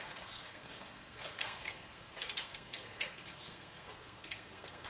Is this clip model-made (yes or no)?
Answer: yes